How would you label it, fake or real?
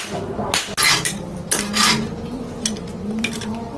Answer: real